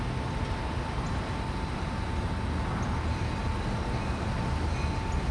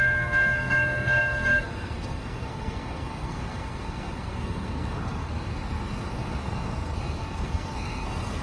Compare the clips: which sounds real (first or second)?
first